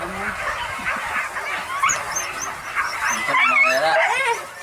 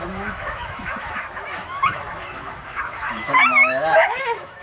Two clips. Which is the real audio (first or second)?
first